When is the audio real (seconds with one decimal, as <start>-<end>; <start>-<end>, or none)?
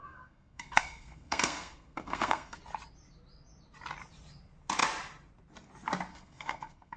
2.6-6.1